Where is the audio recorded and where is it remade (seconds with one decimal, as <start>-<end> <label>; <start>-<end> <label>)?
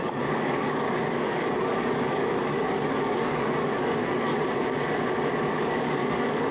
0.0-4.3 remade; 4.3-5.5 recorded; 5.5-6.5 remade